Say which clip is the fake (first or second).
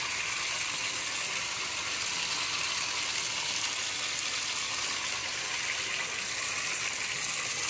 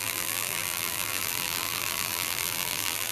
second